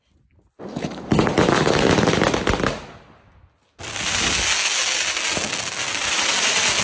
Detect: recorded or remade recorded